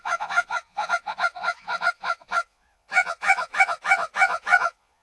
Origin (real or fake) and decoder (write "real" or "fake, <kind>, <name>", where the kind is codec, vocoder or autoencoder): fake, vocoder, Vocos